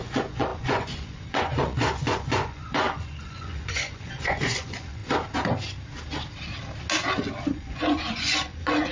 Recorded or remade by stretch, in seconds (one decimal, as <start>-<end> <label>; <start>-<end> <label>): 0.0-5.0 remade; 5.0-7.5 recorded; 7.5-8.9 remade